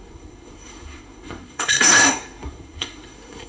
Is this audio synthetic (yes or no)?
yes